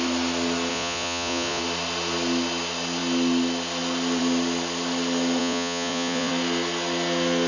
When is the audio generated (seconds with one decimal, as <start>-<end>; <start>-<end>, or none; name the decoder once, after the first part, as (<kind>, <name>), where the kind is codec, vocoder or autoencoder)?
0.7-1.6 (vocoder, Vocos); 5.4-6.3